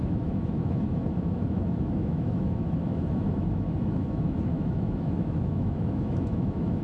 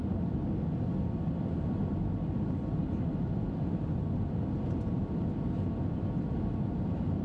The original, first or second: second